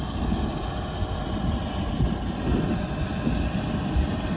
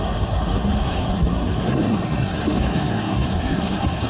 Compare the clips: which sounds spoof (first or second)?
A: second